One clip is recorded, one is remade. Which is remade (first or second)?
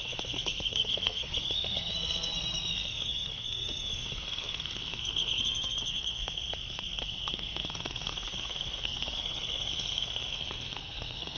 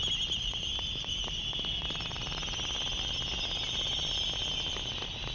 first